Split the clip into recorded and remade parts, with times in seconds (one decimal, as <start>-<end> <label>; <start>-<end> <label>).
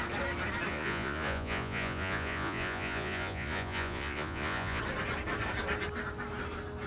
0.0-0.7 recorded; 0.7-4.8 remade; 4.8-6.9 recorded